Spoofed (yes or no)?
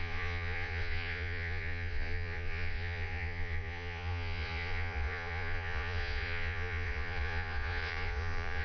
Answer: yes